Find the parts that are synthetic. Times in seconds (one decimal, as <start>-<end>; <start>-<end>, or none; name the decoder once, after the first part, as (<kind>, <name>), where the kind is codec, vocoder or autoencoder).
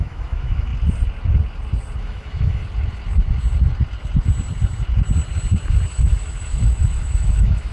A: 0.0-0.7 (autoencoder, DAC-VAE); 2.0-2.6; 5.9-7.7